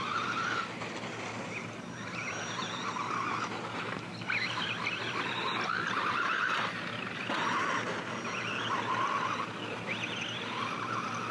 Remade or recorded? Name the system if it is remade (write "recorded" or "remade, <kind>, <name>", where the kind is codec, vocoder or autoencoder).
recorded